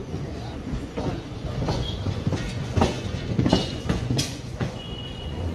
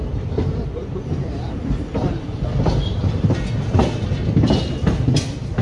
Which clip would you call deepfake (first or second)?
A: first